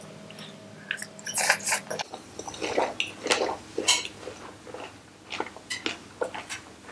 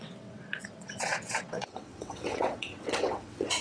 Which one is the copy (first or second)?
second